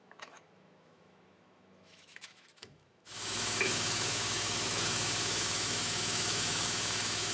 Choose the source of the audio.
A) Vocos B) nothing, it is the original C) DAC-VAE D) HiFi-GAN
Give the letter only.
C